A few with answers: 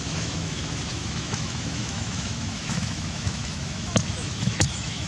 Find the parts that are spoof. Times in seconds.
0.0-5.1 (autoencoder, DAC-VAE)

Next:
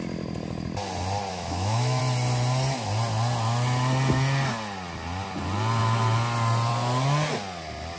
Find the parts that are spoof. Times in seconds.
1.3-2.0 (autoencoder, DAC-VAE)